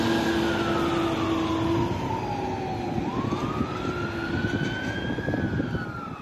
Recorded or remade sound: recorded